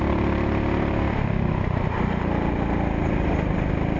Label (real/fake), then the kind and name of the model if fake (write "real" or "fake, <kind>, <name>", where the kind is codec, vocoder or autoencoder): real